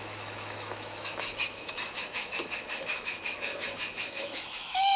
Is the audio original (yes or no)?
no